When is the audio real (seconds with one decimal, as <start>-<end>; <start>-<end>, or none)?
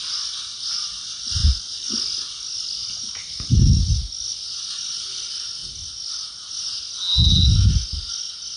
0.0-8.6